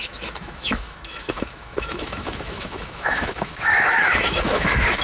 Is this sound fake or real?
fake